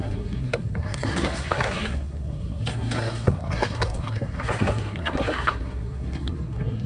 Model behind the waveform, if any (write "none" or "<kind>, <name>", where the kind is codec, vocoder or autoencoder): codec, SNAC